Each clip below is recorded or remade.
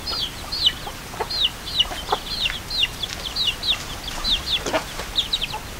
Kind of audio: recorded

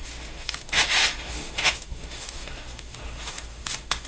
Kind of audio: remade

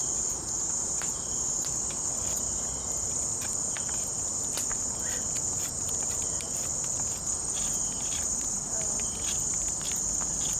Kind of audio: recorded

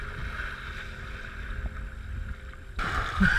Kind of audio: recorded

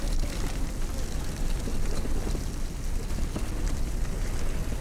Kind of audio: recorded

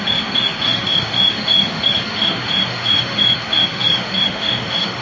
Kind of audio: remade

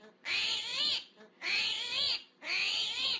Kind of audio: recorded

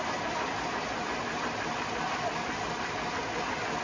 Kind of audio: recorded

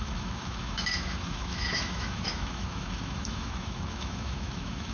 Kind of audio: remade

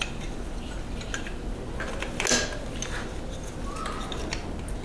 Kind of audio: recorded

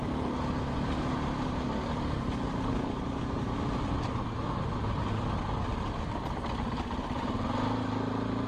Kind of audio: recorded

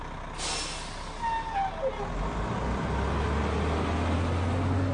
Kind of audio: recorded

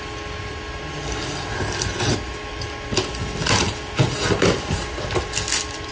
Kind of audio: recorded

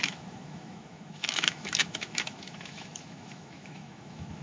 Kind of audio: remade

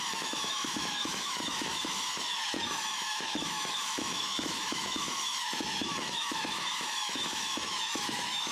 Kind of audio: remade